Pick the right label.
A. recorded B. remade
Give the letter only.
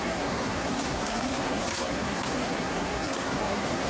B